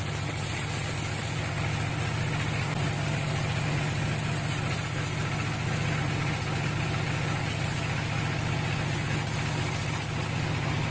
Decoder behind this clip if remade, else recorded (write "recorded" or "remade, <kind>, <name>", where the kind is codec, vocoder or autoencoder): recorded